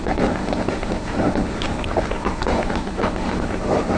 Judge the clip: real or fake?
fake